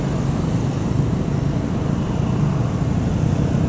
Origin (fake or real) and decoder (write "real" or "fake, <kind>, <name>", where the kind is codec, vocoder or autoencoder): real